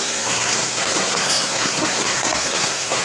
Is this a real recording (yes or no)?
no